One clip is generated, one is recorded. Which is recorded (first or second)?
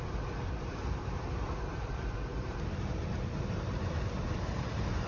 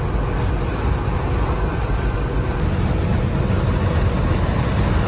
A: second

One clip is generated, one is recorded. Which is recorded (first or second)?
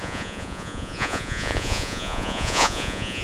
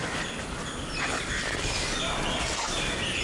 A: second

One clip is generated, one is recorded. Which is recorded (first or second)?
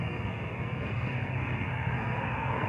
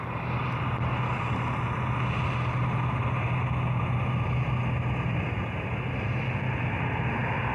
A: second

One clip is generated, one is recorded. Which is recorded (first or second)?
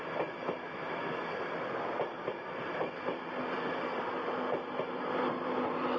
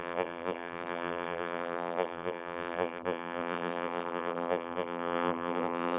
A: first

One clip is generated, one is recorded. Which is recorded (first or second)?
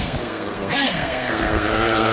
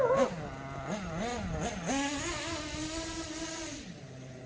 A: second